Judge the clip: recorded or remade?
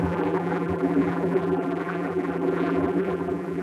remade